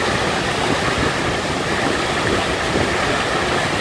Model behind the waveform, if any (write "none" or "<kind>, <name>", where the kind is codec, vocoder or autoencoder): none